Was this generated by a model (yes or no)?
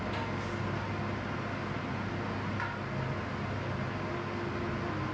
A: no